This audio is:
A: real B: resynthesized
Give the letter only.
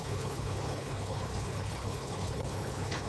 B